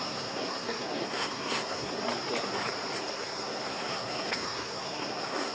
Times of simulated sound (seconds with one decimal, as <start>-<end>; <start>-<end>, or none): 0.0-2.0; 3.0-5.5